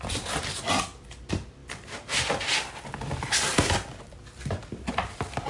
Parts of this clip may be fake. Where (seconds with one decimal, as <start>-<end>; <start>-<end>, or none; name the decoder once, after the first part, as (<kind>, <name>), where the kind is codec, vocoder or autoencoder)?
none